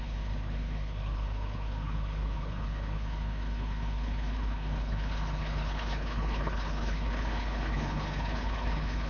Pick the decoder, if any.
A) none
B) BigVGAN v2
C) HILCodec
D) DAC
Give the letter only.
C